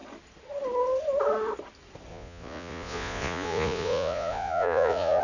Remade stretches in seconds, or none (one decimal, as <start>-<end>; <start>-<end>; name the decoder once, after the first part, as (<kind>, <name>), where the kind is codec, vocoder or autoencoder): 2.1-5.2 (vocoder, Vocos)